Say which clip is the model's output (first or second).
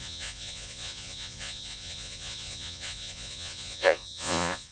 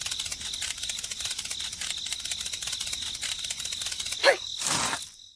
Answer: first